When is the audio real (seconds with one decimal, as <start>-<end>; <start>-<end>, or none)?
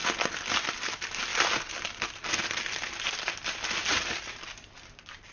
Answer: 0.0-5.3